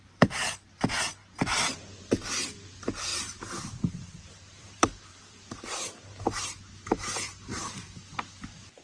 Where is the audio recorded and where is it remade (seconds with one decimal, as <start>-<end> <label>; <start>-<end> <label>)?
0.0-1.2 recorded; 1.2-2.6 remade; 2.6-3.1 recorded; 3.1-6.4 remade; 6.4-8.8 recorded